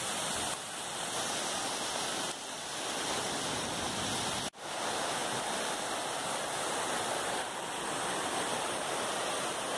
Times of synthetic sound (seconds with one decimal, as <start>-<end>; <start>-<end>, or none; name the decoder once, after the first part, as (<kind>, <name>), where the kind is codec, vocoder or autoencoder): 5.2-7.7 (vocoder, BigVGAN v2); 8.5-9.2

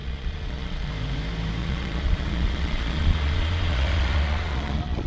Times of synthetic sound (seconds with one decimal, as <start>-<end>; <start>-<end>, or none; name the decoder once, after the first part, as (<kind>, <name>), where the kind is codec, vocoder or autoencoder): 0.0-0.9 (vocoder, Vocos); 1.6-5.1

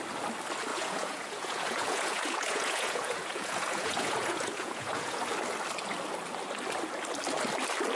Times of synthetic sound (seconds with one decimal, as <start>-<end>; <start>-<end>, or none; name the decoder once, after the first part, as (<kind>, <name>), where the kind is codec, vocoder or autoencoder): 0.7-5.2 (vocoder, Vocos)

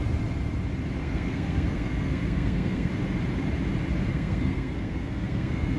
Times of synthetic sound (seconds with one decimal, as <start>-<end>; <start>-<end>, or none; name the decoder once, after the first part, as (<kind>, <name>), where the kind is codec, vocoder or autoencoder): 1.0-2.9 (codec, SNAC); 4.1-5.8